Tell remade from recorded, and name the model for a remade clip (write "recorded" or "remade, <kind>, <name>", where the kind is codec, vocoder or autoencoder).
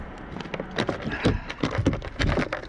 remade, vocoder, BigVGAN v2